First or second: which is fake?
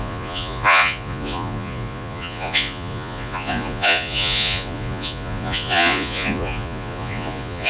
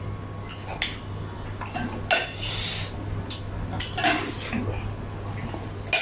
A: first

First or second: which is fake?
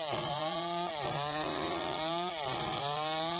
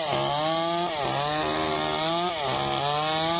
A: first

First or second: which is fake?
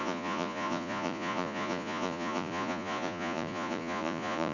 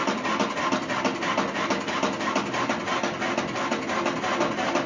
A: first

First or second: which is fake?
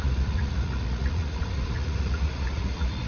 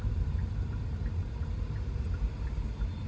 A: first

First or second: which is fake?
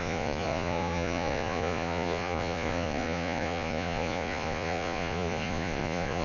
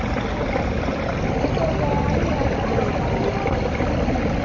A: first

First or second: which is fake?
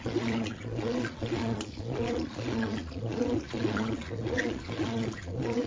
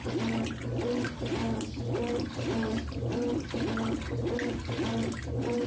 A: first